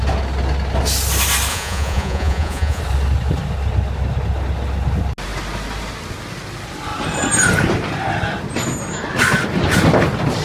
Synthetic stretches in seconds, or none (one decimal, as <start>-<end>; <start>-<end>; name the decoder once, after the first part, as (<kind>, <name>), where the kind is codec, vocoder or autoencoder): 1.5-2.8 (vocoder, Vocos)